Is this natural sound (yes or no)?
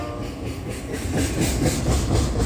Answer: yes